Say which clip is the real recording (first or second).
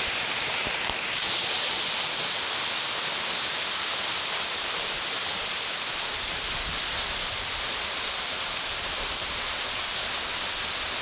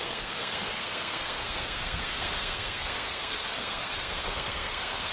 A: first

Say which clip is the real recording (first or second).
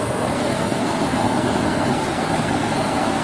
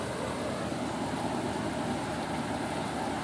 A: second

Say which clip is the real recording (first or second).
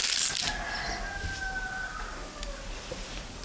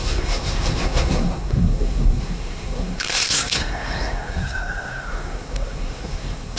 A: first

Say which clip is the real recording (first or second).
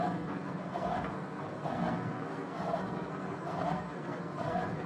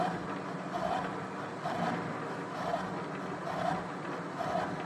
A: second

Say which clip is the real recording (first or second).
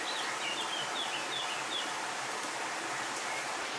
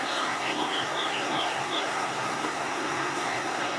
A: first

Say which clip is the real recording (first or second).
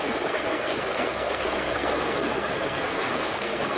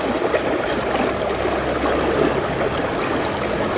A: second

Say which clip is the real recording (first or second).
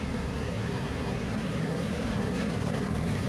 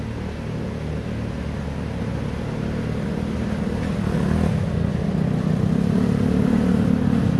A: second